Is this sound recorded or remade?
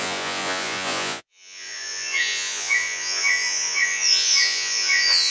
remade